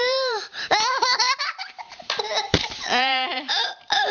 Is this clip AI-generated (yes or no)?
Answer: yes